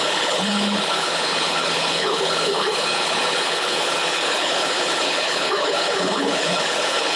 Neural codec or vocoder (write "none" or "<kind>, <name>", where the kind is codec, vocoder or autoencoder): codec, HILCodec